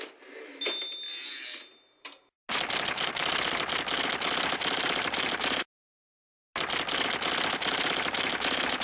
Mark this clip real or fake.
real